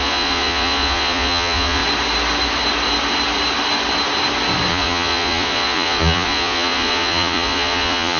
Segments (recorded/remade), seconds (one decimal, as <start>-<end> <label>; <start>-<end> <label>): 0.0-1.8 remade; 1.8-4.7 recorded; 4.7-8.2 remade